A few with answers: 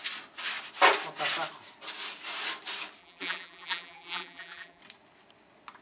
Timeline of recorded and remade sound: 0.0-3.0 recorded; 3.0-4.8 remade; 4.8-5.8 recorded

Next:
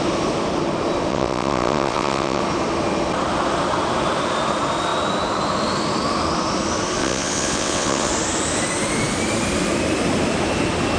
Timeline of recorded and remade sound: 0.0-1.1 recorded; 1.1-2.4 remade; 2.4-7.0 recorded; 7.0-8.1 remade; 8.1-11.0 recorded

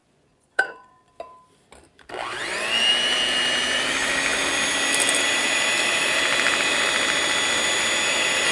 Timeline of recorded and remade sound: 0.0-1.0 remade; 1.0-8.5 recorded

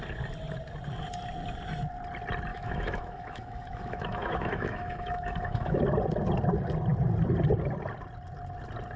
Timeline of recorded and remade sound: 0.0-2.5 recorded; 2.5-5.8 remade; 5.8-9.0 recorded

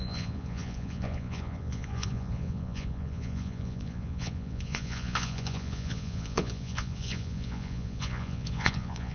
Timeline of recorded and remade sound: 0.0-9.1 remade

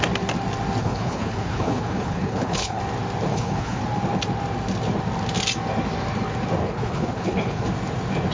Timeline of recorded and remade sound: 0.0-0.8 recorded; 0.8-2.8 remade; 2.8-3.3 recorded; 3.3-3.8 remade; 3.8-6.6 recorded; 6.6-7.6 remade; 7.6-8.3 recorded